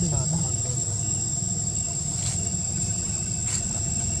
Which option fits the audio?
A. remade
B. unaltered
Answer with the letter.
A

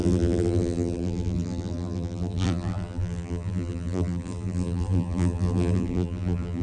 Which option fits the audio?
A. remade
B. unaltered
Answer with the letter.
A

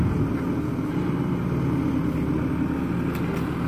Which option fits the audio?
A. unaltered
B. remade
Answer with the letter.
A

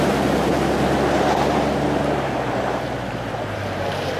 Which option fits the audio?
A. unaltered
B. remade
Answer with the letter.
B